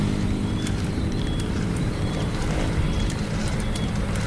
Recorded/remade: remade